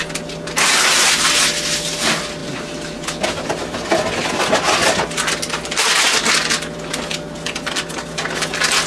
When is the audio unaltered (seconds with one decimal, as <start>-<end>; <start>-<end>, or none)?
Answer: 0.0-2.4; 4.4-8.9